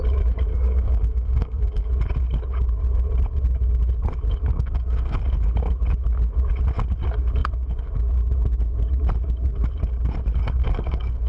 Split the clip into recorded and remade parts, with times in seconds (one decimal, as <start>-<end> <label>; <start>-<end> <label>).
0.0-0.5 recorded; 0.5-1.9 remade; 1.9-4.5 recorded; 4.5-5.2 remade; 5.2-10.4 recorded; 10.4-11.3 remade